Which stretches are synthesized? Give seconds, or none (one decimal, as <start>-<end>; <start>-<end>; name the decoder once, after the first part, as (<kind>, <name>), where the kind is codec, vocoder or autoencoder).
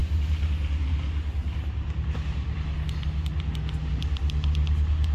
none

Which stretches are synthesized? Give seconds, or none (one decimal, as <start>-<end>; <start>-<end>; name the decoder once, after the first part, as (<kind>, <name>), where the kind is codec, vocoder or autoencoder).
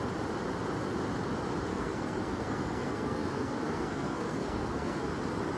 1.7-5.1 (codec, SNAC)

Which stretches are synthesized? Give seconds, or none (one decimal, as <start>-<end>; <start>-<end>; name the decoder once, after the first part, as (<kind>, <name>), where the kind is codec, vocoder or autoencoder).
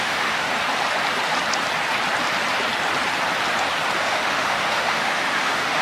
0.0-0.5 (autoencoder, DAC-VAE); 4.0-5.8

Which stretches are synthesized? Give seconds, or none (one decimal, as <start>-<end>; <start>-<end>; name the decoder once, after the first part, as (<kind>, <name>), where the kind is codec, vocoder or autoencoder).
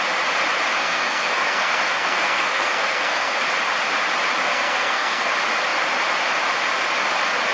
0.8-3.4 (codec, SNAC); 4.5-5.3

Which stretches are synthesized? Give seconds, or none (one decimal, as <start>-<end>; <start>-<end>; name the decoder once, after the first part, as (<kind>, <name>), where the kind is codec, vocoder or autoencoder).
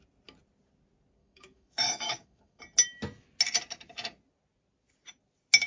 1.2-2.6 (autoencoder, DAC-VAE)